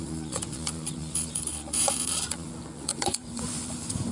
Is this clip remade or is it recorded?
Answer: remade